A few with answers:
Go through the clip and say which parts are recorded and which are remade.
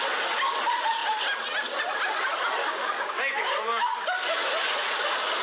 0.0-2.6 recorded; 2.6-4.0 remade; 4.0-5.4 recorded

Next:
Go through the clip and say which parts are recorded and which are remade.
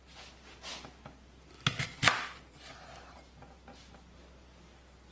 0.0-2.0 recorded; 2.0-2.7 remade; 2.7-5.1 recorded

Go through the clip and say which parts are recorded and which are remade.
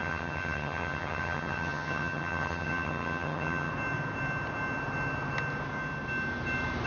0.0-3.7 remade; 3.7-6.9 recorded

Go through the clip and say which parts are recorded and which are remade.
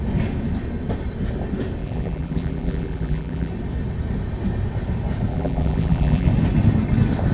0.0-1.8 recorded; 1.8-3.5 remade; 3.5-5.3 recorded; 5.3-6.3 remade; 6.3-7.3 recorded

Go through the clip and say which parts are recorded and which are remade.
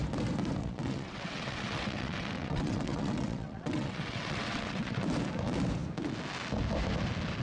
0.0-0.6 recorded; 0.6-5.0 remade; 5.0-7.4 recorded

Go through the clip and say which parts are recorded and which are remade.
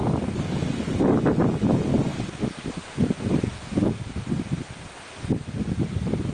0.0-6.3 recorded